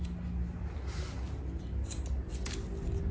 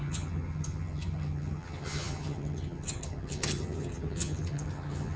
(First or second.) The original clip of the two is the first